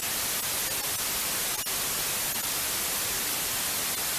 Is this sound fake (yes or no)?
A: no